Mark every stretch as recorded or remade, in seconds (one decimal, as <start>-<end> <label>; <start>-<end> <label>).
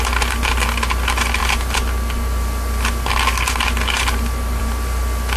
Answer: 0.0-5.4 recorded